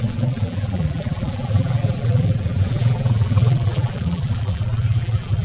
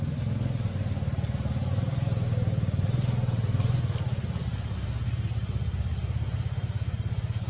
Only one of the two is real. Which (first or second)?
second